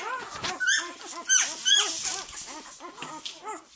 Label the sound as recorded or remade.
recorded